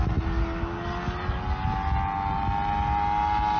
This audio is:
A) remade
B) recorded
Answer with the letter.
B